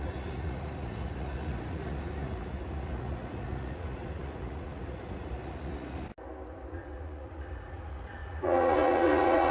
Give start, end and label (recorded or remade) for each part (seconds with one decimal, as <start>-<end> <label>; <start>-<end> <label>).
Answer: 0.0-6.1 remade; 6.1-6.7 recorded; 6.7-9.5 remade